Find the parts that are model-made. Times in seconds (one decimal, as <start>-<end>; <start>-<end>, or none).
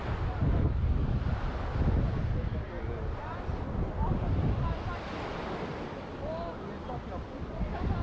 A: none